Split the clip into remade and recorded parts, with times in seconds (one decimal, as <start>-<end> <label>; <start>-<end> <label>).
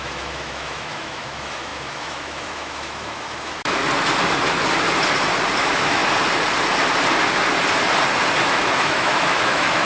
0.0-3.8 remade; 3.8-5.6 recorded; 5.6-6.0 remade; 6.0-8.5 recorded; 8.5-9.9 remade